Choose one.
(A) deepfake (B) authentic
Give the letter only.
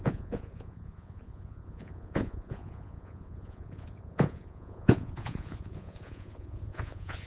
A